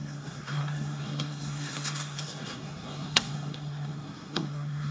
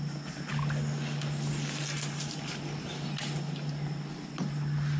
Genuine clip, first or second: second